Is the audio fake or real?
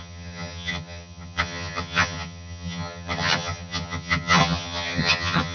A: fake